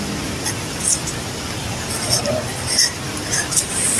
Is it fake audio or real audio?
real